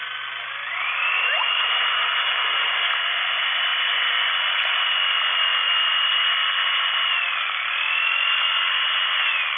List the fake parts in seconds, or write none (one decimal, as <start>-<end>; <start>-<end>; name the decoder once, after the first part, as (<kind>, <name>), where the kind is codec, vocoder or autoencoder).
none